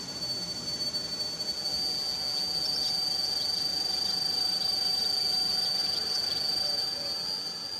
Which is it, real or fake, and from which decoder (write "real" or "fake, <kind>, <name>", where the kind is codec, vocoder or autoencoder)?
real